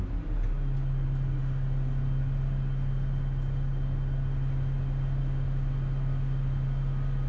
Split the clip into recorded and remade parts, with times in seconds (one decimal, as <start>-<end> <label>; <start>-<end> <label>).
0.0-7.3 recorded